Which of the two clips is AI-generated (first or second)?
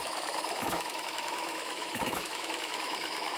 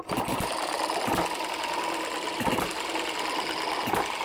first